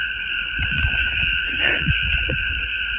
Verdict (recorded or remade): remade